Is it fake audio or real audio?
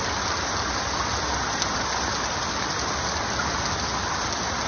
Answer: real